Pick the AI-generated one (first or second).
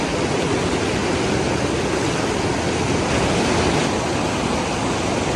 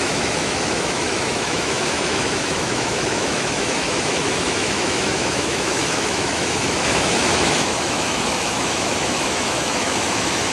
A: second